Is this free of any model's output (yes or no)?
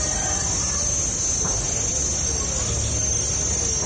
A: yes